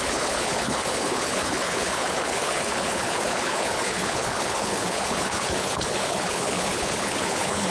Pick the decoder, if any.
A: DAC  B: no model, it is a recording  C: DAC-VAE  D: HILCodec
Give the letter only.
D